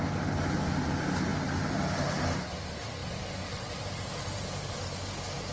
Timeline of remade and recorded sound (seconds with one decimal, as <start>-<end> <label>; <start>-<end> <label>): 0.0-1.3 recorded; 1.3-2.1 remade; 2.1-3.0 recorded; 3.0-4.7 remade; 4.7-5.5 recorded